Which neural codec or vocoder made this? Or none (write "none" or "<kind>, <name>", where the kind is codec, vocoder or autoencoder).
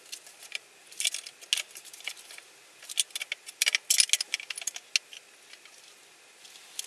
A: none